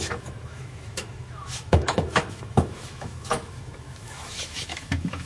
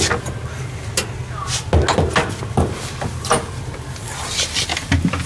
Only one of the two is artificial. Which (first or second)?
first